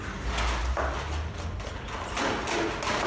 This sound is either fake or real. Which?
real